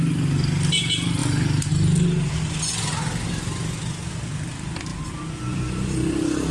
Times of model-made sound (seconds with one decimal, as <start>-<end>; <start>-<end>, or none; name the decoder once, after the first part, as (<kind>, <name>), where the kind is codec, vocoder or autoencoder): 1.2-1.7 (vocoder, BigVGAN v2); 4.9-6.5